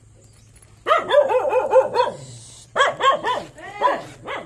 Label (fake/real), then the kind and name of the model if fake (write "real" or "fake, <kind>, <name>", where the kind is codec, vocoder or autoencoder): real